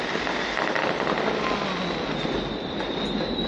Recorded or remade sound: recorded